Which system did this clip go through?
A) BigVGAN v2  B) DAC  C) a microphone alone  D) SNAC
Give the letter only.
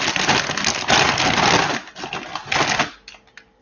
C